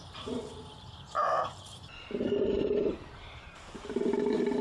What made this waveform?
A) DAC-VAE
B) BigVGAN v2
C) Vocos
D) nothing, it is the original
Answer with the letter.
B